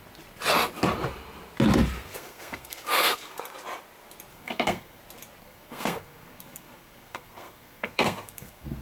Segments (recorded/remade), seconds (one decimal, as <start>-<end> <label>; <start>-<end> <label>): 0.0-2.0 recorded; 2.0-3.4 remade; 3.4-4.3 recorded; 4.3-5.0 remade; 5.0-5.4 recorded; 5.4-8.8 remade